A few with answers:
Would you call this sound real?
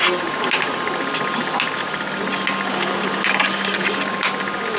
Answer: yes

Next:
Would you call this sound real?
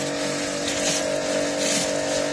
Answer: yes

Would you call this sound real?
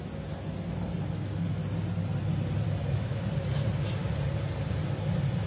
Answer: yes